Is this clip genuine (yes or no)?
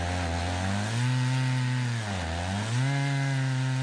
yes